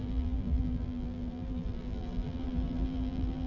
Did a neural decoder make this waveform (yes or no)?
yes